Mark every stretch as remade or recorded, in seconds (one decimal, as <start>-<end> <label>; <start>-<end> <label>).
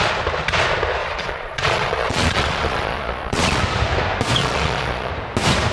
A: 0.0-1.0 recorded; 1.0-3.6 remade; 3.6-4.4 recorded; 4.4-5.1 remade; 5.1-5.7 recorded